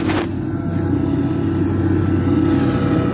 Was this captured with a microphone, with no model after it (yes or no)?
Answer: yes